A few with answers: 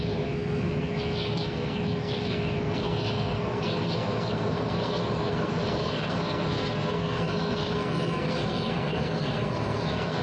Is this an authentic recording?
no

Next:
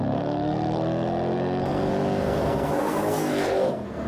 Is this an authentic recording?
no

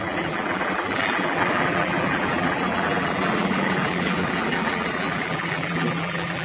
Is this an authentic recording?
no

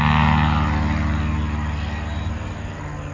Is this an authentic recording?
yes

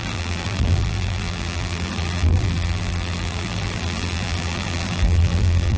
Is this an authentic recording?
no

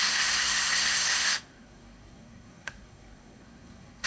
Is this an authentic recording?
no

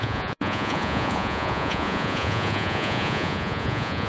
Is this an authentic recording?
no